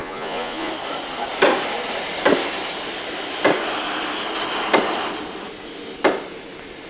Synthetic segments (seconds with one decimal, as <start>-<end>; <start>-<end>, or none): 0.0-0.7